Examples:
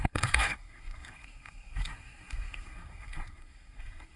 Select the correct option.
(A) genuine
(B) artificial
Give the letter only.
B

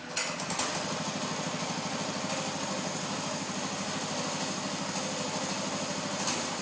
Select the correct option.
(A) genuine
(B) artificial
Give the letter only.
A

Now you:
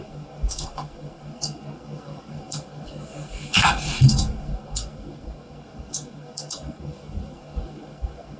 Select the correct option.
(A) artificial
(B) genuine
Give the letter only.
A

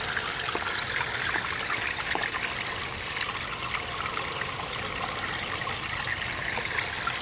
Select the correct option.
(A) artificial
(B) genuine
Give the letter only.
B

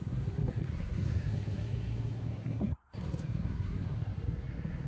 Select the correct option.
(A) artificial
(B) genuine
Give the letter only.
A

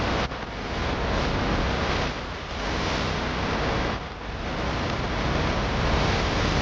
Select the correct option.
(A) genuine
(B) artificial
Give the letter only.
A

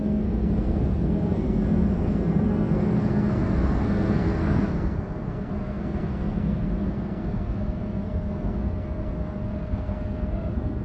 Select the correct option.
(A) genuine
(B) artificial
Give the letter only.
B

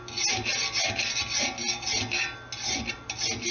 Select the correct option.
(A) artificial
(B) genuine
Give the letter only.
B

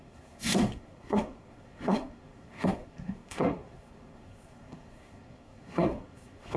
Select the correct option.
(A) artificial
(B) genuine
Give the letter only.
A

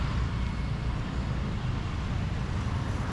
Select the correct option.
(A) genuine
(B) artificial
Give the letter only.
A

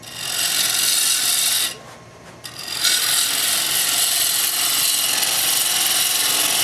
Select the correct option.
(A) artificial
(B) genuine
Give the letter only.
B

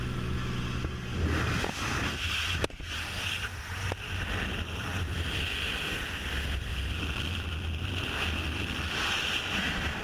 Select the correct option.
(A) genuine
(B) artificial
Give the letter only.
A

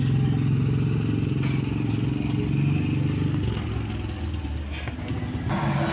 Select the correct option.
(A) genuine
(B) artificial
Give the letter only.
A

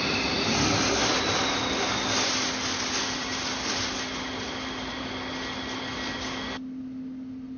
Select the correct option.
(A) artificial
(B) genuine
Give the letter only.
B